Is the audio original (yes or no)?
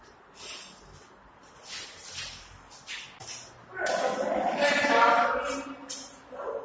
yes